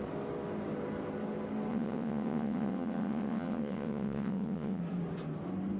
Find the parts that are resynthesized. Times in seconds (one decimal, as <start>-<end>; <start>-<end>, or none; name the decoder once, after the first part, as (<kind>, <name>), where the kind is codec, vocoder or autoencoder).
1.7-4.8 (vocoder, WaveNeXt)